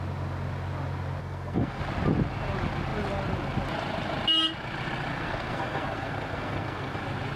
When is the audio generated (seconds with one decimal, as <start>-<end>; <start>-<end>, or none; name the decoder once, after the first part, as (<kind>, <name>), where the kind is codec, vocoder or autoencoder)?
1.2-1.8 (codec, SNAC); 5.1-7.0